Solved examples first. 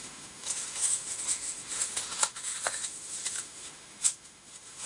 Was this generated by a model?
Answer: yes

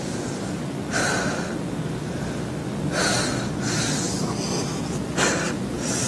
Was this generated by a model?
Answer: no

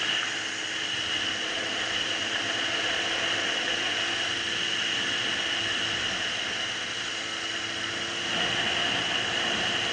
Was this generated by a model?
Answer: no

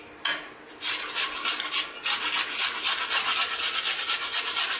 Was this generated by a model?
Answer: no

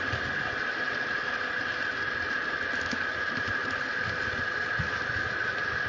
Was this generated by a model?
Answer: no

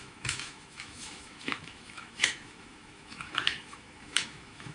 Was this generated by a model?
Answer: yes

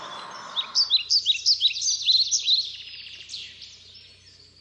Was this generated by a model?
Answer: no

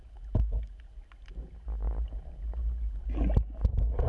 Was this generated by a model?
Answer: no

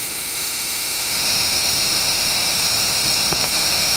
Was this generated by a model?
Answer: yes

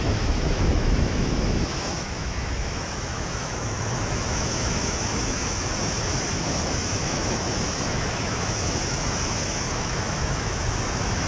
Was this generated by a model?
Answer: yes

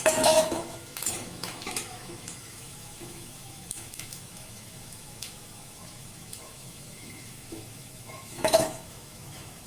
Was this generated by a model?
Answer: yes